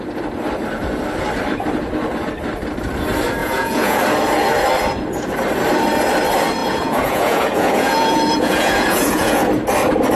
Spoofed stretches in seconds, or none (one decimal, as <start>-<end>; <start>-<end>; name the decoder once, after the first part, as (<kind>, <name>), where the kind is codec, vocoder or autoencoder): 3.4-4.0 (vocoder, Vocos); 6.6-9.4